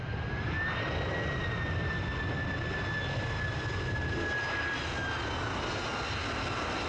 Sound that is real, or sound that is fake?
real